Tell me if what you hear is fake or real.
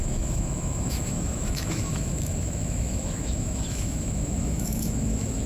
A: fake